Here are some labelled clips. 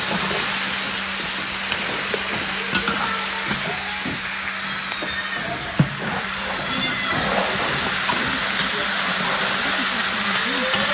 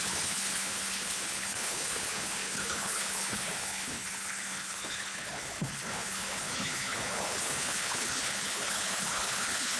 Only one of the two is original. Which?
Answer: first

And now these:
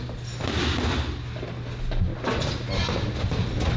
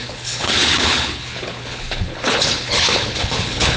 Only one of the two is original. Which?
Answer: first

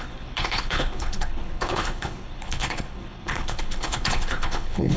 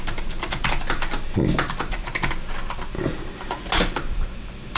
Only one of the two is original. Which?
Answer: second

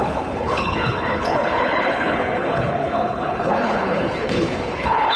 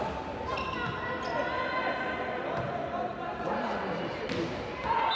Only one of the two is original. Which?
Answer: second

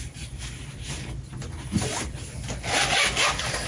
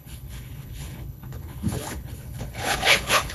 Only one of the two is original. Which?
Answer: first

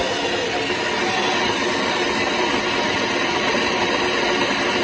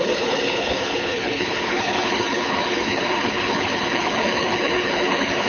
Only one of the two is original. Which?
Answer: first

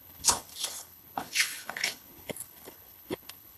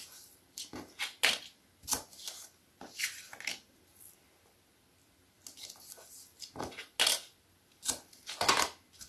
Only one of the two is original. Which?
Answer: second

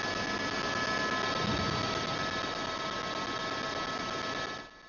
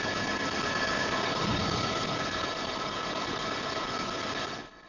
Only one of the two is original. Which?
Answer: first